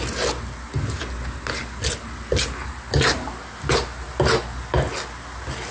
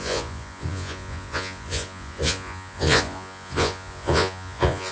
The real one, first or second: first